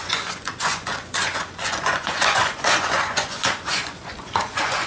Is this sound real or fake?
fake